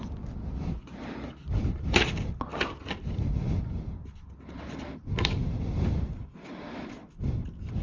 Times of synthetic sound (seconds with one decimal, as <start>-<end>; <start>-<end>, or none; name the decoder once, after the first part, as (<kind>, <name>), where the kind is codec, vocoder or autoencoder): none